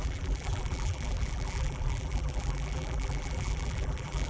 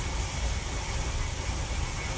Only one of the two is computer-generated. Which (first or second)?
first